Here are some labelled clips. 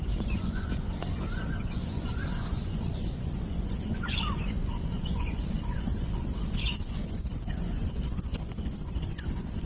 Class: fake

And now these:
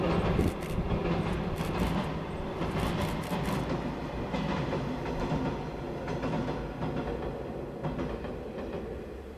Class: real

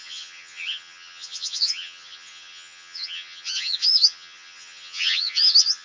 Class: fake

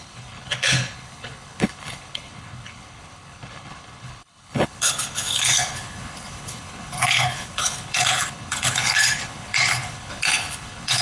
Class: fake